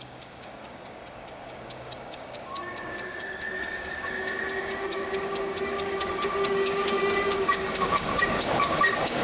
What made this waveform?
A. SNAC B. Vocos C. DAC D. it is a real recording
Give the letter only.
C